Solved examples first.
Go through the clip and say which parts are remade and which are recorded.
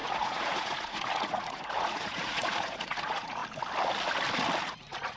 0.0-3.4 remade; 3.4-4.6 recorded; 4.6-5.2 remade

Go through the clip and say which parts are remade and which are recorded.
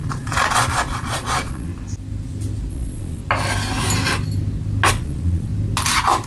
0.0-1.7 remade; 1.7-2.7 recorded; 2.7-3.2 remade; 3.2-4.9 recorded; 4.9-5.5 remade; 5.5-6.3 recorded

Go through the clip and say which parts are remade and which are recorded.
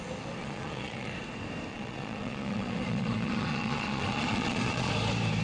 0.0-0.4 recorded; 0.4-1.1 remade; 1.1-1.7 recorded; 1.7-4.9 remade; 4.9-5.4 recorded